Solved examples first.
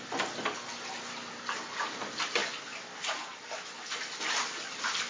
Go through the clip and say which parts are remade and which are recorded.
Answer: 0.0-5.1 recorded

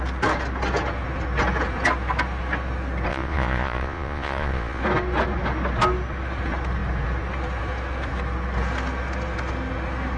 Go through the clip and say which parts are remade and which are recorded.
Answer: 0.0-3.1 recorded; 3.1-4.8 remade; 4.8-10.2 recorded

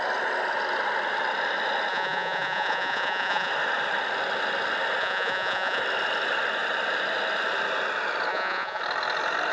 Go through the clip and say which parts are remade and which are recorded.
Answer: 0.0-1.9 recorded; 1.9-3.5 remade; 3.5-5.0 recorded; 5.0-5.8 remade; 5.8-8.3 recorded; 8.3-8.8 remade; 8.8-9.5 recorded

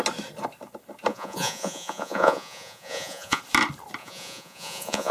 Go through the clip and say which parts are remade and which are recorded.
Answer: 0.0-1.1 recorded; 1.1-3.4 remade; 3.4-4.0 recorded; 4.0-5.1 remade